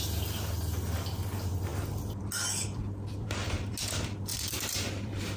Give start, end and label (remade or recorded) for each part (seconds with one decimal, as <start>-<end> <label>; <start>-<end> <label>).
0.0-4.3 recorded; 4.3-4.9 remade; 4.9-5.4 recorded